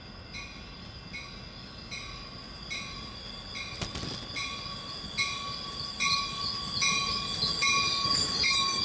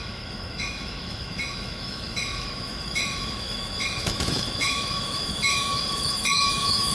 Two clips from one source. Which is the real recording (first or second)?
first